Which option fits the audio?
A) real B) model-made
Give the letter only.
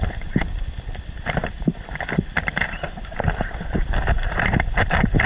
B